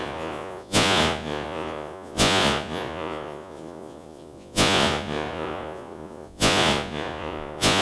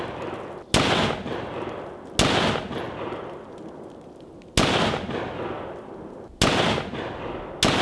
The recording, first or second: second